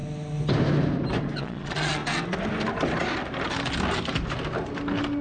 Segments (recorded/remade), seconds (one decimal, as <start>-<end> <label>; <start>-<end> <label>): 0.0-1.4 recorded; 1.4-2.0 remade; 2.0-5.2 recorded